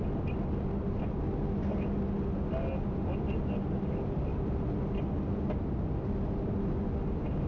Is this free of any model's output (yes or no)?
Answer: yes